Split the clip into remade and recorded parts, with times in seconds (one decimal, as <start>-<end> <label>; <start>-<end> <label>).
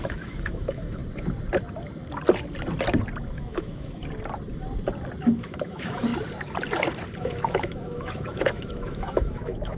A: 0.0-1.0 remade; 1.0-3.3 recorded; 3.3-4.0 remade; 4.0-5.3 recorded; 5.3-6.1 remade; 6.1-7.2 recorded; 7.2-9.8 remade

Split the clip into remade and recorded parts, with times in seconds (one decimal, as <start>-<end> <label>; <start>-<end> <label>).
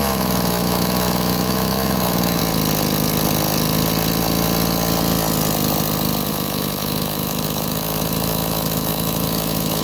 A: 0.0-2.4 remade; 2.4-6.3 recorded; 6.3-9.8 remade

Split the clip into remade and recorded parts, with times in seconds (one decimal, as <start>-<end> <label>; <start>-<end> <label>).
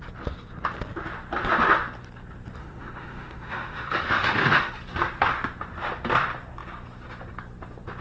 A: 0.0-2.6 recorded; 2.6-4.7 remade; 4.7-8.0 recorded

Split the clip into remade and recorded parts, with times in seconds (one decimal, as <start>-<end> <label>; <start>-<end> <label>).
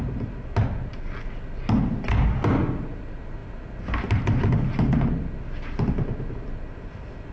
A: 0.0-7.3 recorded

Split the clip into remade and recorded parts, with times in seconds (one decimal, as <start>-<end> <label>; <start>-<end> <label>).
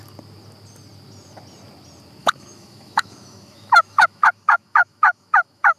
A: 0.0-2.2 recorded; 2.2-5.8 remade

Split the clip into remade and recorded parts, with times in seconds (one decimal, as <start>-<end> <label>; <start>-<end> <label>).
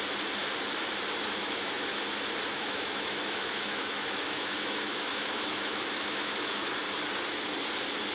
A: 0.0-1.4 recorded; 1.4-2.0 remade; 2.0-2.5 recorded; 2.5-6.7 remade; 6.7-8.1 recorded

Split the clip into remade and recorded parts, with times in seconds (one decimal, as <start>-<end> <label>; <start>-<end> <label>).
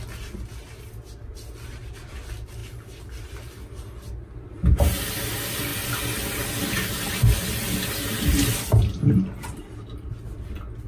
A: 0.0-10.9 recorded